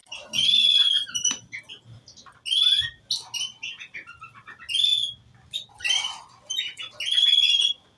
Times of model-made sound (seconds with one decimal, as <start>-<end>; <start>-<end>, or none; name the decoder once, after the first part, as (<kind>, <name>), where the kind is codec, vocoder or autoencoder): none